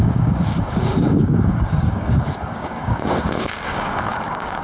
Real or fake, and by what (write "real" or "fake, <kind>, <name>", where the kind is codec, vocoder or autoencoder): fake, codec, DAC